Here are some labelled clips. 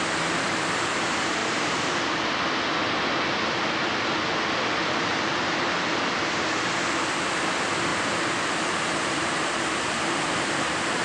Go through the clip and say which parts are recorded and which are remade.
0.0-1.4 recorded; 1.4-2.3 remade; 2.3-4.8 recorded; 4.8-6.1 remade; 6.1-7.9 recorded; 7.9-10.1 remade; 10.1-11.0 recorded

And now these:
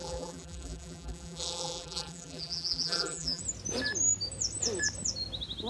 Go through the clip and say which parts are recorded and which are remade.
0.0-3.4 remade; 3.4-5.7 recorded

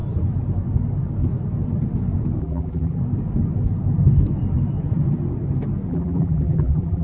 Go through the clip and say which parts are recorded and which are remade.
0.0-2.4 recorded; 2.4-3.0 remade; 3.0-5.9 recorded; 5.9-7.0 remade

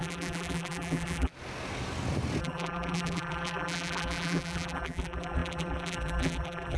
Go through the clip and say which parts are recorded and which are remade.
0.0-1.3 remade; 1.3-2.4 recorded; 2.4-6.8 remade

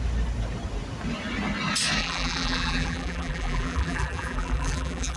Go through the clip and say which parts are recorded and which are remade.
0.0-2.0 recorded; 2.0-5.2 remade

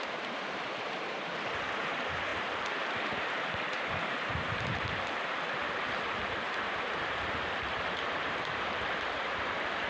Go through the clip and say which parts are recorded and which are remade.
0.0-9.9 remade